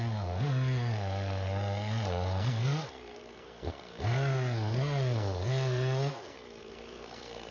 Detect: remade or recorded remade